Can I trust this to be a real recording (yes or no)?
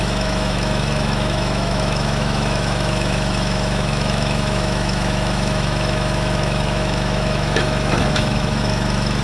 no